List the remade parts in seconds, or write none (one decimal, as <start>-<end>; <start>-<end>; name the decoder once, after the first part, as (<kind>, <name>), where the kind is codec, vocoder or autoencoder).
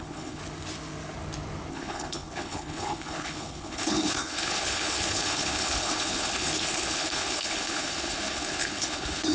0.0-0.4 (codec, HILCodec); 1.7-9.3